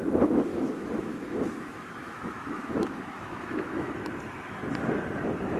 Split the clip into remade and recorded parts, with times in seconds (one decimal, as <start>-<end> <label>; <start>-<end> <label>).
0.0-0.5 recorded; 0.5-3.9 remade; 3.9-5.6 recorded